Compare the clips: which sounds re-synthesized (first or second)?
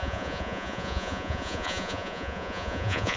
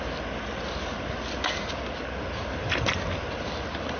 first